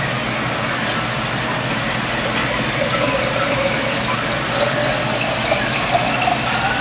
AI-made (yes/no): no